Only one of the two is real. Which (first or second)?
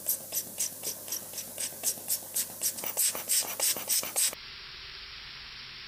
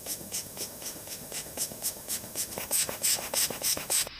first